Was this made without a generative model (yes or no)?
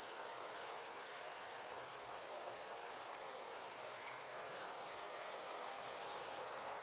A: no